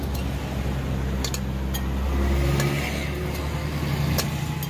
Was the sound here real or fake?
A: real